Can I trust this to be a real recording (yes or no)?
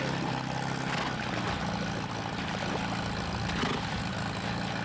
yes